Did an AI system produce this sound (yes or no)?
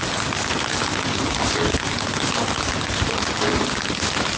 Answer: no